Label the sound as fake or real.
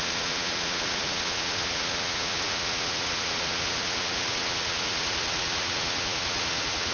fake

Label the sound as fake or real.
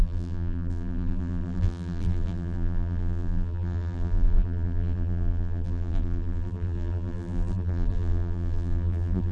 fake